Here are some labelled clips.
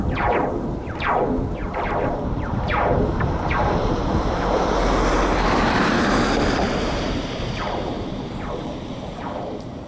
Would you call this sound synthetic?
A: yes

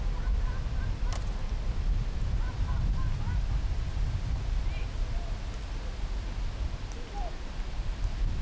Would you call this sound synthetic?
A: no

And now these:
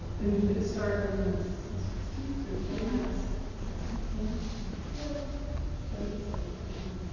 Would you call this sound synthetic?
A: no